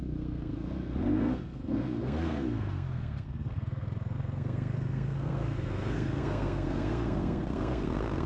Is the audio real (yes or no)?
no